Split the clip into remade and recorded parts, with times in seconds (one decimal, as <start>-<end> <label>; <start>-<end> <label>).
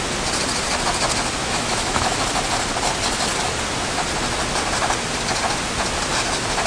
0.0-1.4 recorded; 1.4-2.2 remade; 2.2-6.7 recorded